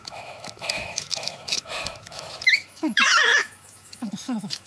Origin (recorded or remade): remade